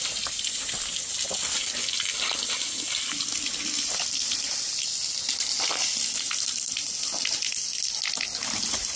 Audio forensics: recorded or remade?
recorded